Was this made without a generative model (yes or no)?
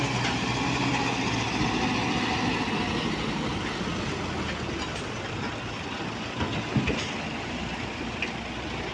yes